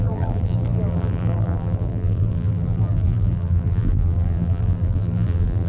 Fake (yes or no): yes